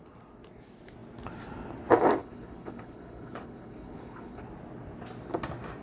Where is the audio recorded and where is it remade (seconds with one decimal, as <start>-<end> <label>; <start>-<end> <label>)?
0.0-2.2 recorded; 2.2-4.4 remade; 4.4-5.8 recorded